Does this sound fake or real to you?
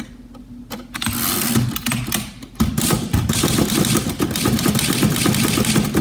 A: real